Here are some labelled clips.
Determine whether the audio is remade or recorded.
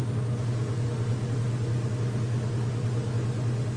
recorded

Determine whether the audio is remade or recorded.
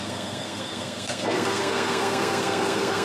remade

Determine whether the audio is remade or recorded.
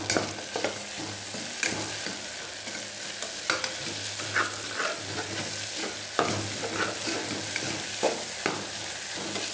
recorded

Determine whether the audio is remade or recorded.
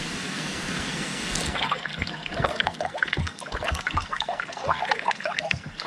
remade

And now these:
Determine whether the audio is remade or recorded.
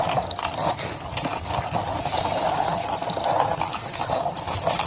recorded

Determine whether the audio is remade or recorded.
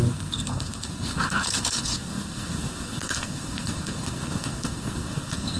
remade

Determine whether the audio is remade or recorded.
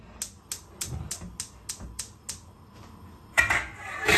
recorded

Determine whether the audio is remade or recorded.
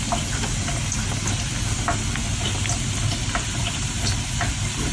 recorded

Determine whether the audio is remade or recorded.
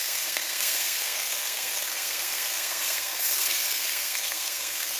remade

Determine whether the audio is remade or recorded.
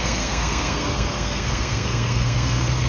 remade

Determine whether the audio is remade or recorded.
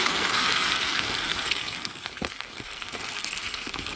remade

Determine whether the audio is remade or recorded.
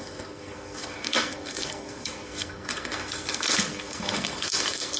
remade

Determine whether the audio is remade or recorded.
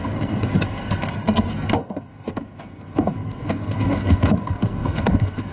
remade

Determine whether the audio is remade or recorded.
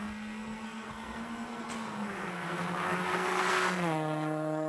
remade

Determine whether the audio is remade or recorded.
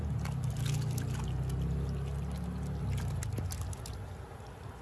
recorded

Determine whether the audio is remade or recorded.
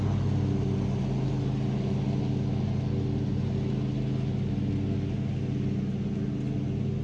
recorded